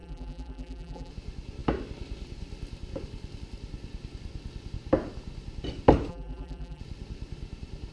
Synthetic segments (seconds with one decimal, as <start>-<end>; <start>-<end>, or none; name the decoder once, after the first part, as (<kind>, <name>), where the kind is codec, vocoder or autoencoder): 0.0-1.1 (vocoder, BigVGAN v2); 6.1-6.8